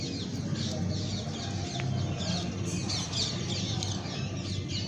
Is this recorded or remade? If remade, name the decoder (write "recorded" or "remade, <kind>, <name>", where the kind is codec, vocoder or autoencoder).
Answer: recorded